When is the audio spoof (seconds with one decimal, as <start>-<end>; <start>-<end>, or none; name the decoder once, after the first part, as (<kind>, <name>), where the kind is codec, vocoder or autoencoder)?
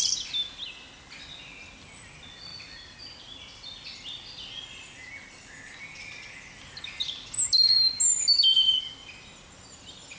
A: none